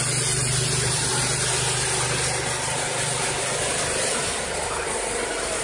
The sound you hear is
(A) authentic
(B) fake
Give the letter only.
A